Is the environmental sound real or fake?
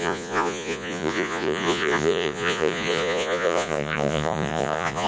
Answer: fake